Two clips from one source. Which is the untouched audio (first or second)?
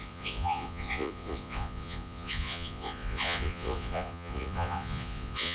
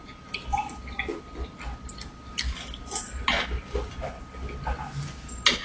second